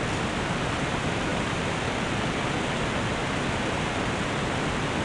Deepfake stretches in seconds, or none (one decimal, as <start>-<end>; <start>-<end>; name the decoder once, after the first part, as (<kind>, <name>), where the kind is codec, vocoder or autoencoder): none